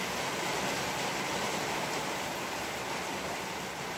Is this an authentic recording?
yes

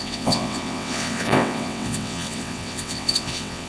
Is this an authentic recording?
no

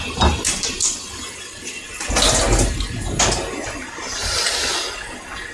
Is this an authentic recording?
yes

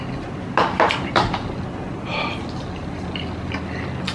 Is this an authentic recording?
yes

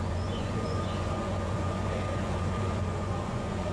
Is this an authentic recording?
no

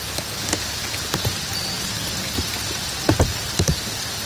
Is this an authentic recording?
yes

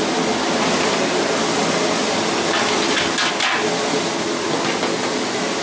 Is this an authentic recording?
yes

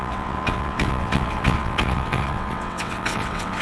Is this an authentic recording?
no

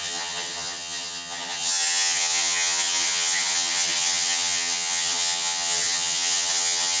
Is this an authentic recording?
no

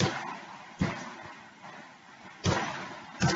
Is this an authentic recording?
yes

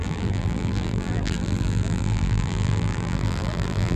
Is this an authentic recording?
no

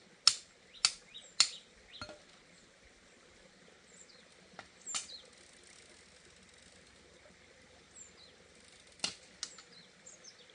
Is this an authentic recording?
yes